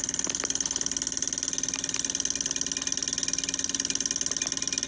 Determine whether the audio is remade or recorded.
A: recorded